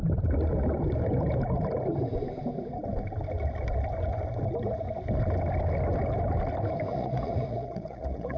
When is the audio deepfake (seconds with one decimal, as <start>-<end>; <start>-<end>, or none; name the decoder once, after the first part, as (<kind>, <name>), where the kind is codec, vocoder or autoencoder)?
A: 6.9-8.4 (vocoder, Vocos)